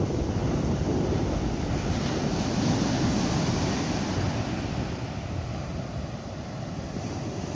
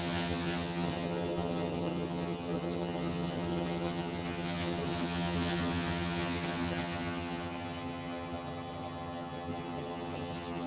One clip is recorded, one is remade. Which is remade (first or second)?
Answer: second